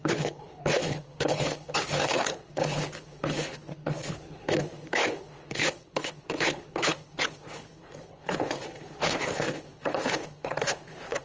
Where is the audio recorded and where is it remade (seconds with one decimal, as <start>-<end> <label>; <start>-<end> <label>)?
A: 0.0-11.2 remade